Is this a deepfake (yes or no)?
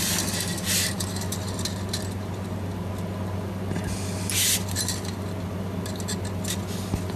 no